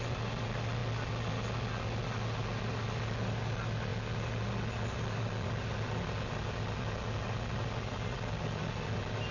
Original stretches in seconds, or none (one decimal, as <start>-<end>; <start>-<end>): 0.0-9.3